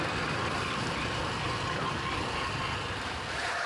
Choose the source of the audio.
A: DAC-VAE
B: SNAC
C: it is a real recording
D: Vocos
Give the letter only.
C